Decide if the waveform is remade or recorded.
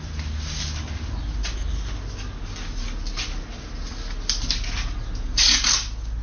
recorded